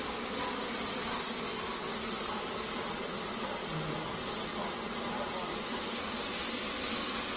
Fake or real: real